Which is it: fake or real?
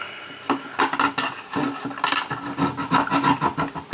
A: real